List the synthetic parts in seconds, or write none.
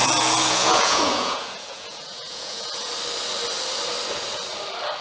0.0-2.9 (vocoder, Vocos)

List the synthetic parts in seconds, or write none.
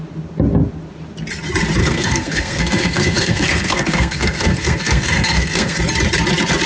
1.8-5.8 (codec, SNAC)